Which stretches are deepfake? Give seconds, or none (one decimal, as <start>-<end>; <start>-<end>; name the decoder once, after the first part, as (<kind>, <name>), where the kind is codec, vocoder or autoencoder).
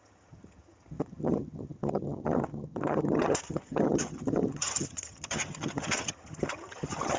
0.0-7.2 (vocoder, HiFi-GAN)